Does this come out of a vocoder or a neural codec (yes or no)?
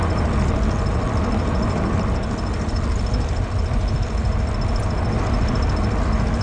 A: no